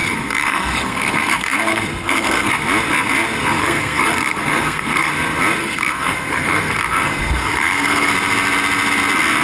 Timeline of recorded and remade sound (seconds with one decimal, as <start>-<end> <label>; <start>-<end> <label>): 0.0-2.5 remade; 2.5-3.6 recorded; 3.6-5.1 remade; 5.1-5.6 recorded; 5.6-8.1 remade; 8.1-9.4 recorded